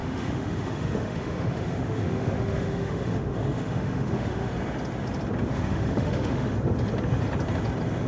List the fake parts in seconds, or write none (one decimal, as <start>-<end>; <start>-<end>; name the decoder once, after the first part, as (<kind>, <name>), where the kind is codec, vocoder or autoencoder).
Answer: 0.0-4.5 (autoencoder, DAC-VAE); 5.5-6.5